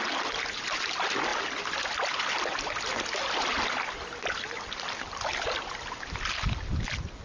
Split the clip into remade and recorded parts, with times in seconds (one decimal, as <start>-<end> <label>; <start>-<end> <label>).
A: 0.0-7.2 recorded